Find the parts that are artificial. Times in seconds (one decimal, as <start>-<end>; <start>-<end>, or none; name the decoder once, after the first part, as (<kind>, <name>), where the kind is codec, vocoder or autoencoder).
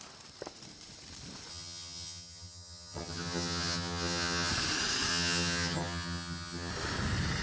1.5-4.5 (vocoder, HiFi-GAN); 5.1-6.7